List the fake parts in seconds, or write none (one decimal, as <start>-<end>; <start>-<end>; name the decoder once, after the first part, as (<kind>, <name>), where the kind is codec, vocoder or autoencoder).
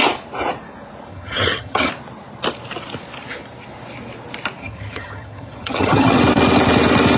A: 1.1-1.9 (vocoder, HiFi-GAN); 4.6-6.2